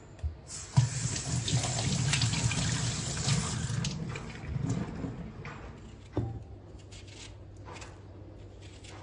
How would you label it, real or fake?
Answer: real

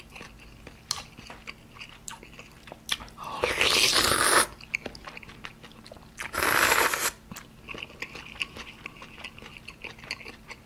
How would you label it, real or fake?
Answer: real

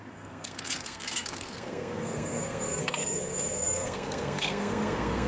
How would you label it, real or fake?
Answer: fake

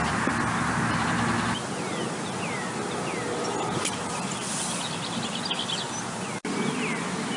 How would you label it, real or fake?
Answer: real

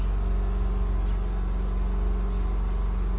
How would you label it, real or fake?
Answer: real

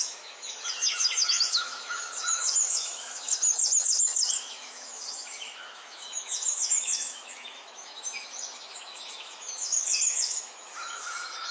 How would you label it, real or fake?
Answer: fake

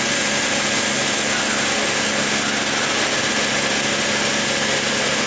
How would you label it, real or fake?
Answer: real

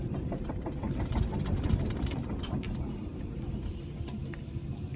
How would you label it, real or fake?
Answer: fake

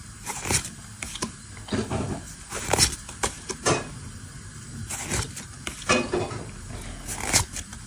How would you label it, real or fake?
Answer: real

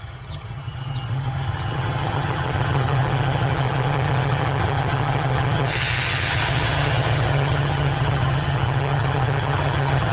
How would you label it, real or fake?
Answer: fake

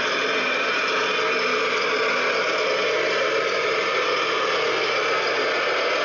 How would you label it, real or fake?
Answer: real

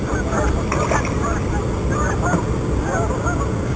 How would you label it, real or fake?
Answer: real